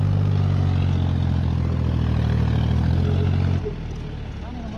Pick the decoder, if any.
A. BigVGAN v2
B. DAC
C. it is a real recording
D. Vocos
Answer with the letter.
C